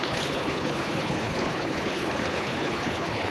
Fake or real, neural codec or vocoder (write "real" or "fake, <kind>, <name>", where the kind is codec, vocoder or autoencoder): fake, codec, HILCodec